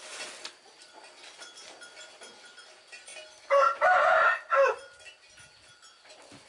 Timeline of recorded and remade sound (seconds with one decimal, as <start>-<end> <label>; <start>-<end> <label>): 0.0-6.5 recorded